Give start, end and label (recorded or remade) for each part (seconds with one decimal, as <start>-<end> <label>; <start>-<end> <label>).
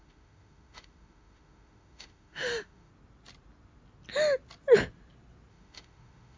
0.0-2.9 remade; 2.9-5.5 recorded; 5.5-6.4 remade